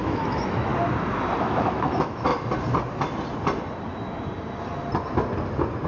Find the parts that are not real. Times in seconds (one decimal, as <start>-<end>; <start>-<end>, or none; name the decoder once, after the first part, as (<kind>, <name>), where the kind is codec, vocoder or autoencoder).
0.0-0.7 (autoencoder, DAC-VAE); 1.4-2.3